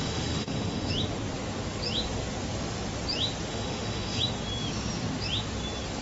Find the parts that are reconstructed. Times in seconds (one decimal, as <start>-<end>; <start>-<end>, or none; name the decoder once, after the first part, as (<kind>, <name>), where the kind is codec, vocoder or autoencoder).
0.0-0.9 (autoencoder, DAC-VAE); 3.5-4.2